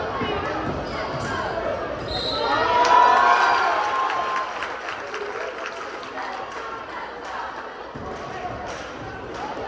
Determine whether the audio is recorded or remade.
recorded